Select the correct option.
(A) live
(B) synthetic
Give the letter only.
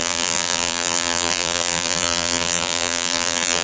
B